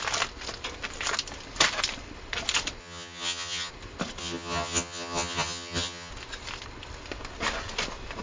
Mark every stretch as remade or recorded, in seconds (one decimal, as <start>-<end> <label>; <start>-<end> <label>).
0.0-2.8 recorded; 2.8-3.7 remade; 3.7-4.2 recorded; 4.2-6.1 remade; 6.1-8.2 recorded